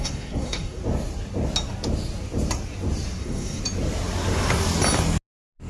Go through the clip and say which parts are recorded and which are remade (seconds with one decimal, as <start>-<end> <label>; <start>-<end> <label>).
0.0-0.8 remade; 0.8-3.2 recorded; 3.2-3.6 remade; 3.6-5.7 recorded